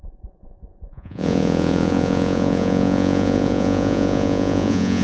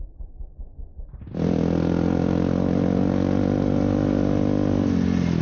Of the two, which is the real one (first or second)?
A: second